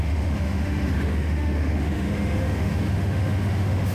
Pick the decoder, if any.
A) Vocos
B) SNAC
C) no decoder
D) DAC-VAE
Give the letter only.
D